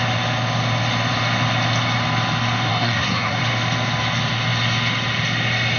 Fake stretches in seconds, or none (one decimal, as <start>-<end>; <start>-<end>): 2.7-3.4